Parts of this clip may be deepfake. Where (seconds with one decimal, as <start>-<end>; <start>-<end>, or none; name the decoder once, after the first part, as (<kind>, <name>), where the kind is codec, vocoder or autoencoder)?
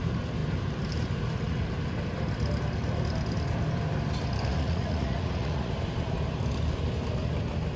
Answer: 4.5-5.7 (vocoder, Vocos)